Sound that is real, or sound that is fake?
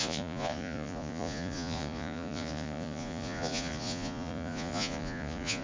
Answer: fake